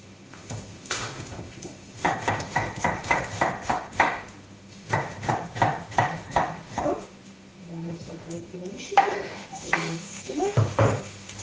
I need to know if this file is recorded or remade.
remade